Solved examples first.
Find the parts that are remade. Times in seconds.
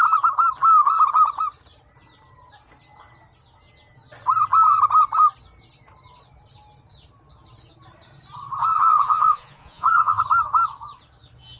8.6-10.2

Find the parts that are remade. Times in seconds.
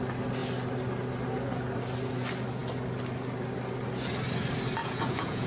4.8-5.5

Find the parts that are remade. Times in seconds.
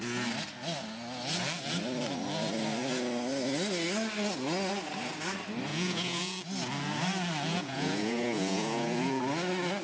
5.7-6.4; 7.5-9.2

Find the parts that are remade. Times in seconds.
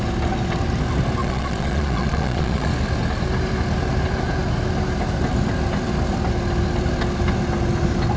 1.2-2.7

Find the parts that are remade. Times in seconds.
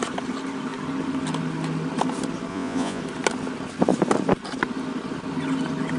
2.5-3.0